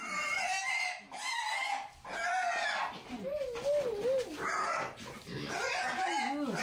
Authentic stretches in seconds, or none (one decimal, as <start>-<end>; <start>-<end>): 0.0-6.6